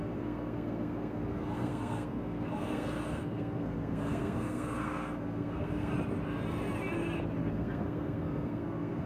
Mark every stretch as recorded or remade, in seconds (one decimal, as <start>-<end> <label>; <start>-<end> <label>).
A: 0.0-5.9 remade; 5.9-7.4 recorded; 7.4-9.1 remade